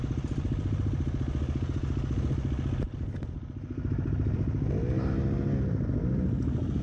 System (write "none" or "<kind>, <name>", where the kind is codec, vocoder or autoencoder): none